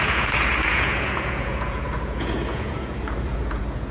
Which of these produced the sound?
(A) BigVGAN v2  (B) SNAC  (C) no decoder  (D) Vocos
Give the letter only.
D